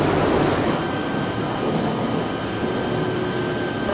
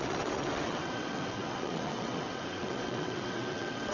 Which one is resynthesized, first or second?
second